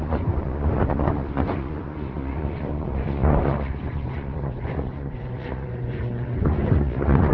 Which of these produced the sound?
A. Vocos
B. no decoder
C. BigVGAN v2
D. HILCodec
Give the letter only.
A